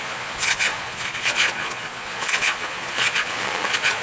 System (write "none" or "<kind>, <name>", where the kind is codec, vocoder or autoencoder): vocoder, Vocos